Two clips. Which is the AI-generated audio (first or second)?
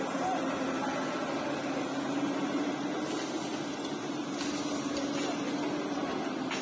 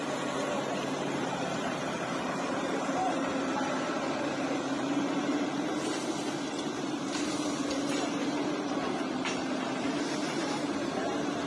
second